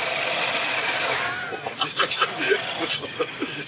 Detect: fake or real real